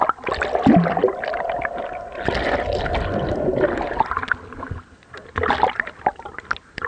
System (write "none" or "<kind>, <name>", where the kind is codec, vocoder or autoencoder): none